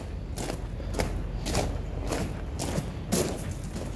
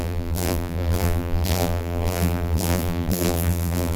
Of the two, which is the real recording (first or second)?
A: first